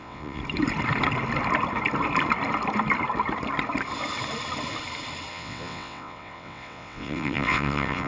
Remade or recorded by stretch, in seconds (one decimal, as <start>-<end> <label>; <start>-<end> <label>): 0.0-0.4 remade; 0.4-5.3 recorded; 5.3-8.1 remade